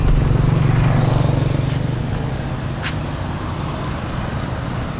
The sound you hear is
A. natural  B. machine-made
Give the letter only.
A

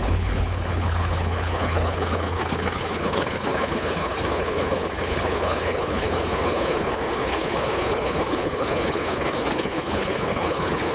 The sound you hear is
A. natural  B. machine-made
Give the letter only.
B